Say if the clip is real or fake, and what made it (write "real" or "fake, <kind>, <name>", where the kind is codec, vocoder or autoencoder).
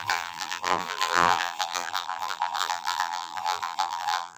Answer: fake, vocoder, BigVGAN v2